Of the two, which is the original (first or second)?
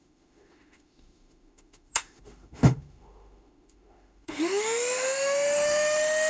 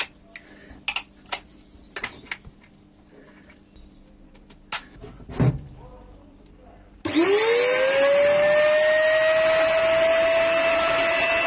second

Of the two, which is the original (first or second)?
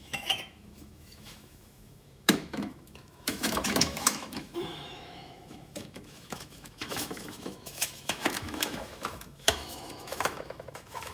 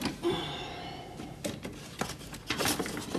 second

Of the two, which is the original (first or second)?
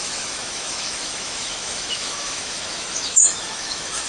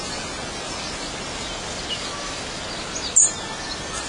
second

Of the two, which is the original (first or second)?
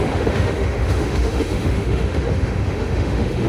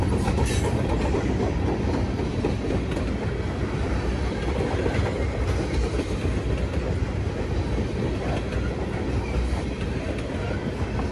second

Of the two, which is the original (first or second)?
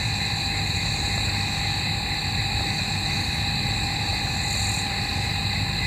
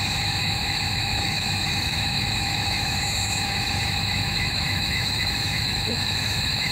first